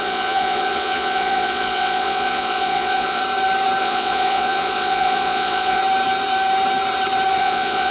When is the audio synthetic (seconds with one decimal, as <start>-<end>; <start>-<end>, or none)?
0.0-3.2; 3.8-5.8; 7.4-7.9